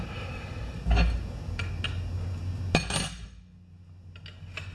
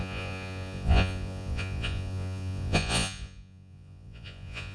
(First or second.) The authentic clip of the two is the first